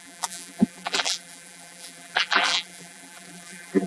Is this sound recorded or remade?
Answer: remade